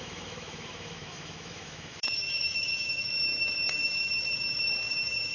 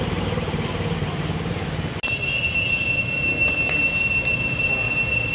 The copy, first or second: first